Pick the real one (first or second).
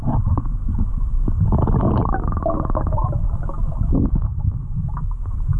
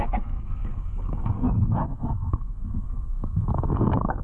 first